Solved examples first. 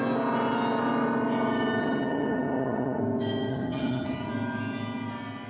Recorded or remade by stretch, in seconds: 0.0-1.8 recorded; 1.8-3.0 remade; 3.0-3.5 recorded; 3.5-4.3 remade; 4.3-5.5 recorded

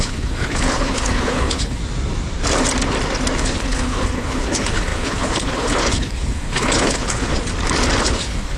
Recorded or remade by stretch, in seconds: 0.0-1.8 remade; 1.8-3.4 recorded; 3.4-7.3 remade; 7.3-8.0 recorded; 8.0-8.6 remade

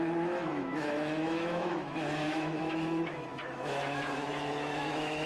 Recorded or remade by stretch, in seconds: 0.0-5.3 remade

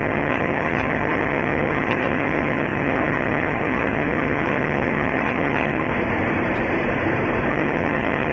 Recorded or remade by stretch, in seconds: 0.0-5.9 remade; 5.9-7.5 recorded; 7.5-8.3 remade

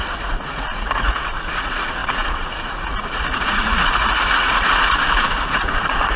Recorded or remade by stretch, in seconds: 0.0-6.2 remade

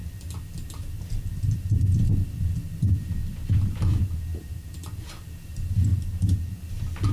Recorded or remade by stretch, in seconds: 0.0-4.3 recorded; 4.3-5.1 remade; 5.1-5.9 recorded; 5.9-6.6 remade; 6.6-7.1 recorded

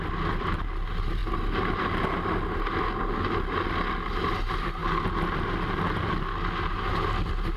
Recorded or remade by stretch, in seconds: 0.0-7.6 recorded

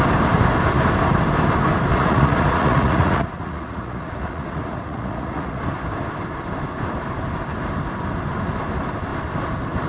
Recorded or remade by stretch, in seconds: 0.0-1.9 recorded; 1.9-5.6 remade; 5.6-9.9 recorded